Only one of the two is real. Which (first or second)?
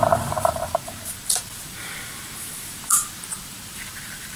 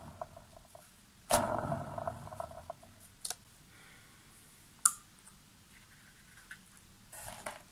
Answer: second